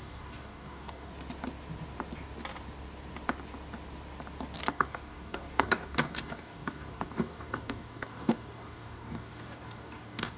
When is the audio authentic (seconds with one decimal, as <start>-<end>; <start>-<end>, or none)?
1.1-4.7